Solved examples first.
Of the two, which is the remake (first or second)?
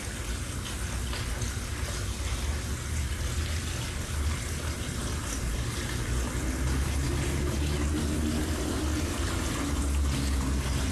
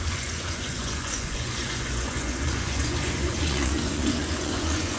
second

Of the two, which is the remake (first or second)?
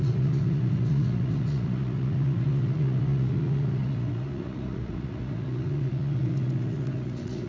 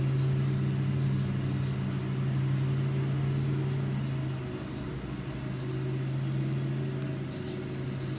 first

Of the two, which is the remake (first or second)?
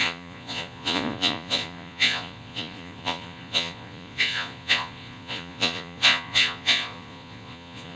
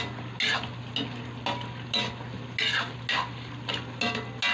first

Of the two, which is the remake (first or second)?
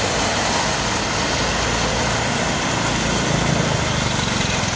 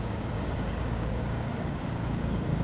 second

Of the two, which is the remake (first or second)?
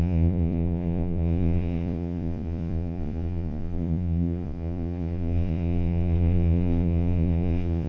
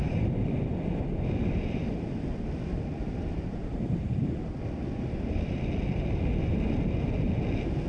first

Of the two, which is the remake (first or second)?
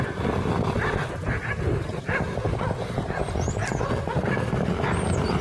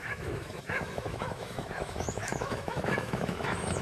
second